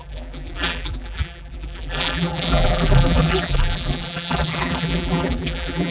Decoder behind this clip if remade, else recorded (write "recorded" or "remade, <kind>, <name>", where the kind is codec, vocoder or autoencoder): remade, vocoder, BigVGAN v2